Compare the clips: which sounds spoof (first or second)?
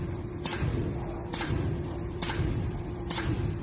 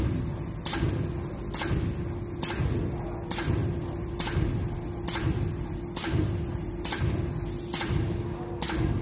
first